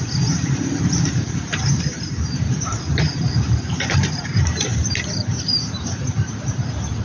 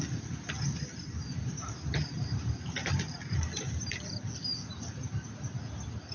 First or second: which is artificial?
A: first